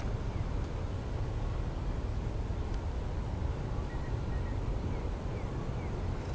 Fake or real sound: real